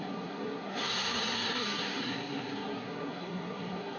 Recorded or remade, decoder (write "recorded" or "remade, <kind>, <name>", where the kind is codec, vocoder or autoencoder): remade, codec, SNAC